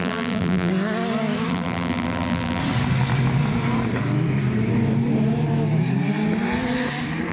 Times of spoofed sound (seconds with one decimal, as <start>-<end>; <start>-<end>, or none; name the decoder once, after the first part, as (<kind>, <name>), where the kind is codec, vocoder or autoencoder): 0.0-0.7 (vocoder, BigVGAN v2); 1.5-2.6